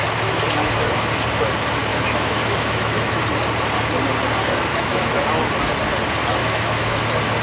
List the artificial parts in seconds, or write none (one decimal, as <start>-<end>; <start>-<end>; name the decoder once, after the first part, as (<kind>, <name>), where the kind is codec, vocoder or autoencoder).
1.9-3.2 (autoencoder, DAC-VAE); 4.7-5.2; 6.4-7.0